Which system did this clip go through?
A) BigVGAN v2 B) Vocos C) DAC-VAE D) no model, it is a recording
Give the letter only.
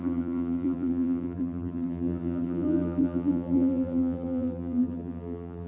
A